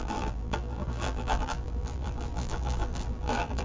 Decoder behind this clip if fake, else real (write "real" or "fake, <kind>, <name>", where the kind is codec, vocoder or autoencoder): fake, vocoder, BigVGAN v2